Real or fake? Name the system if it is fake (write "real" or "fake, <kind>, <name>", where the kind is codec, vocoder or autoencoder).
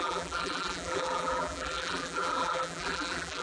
fake, vocoder, BigVGAN v2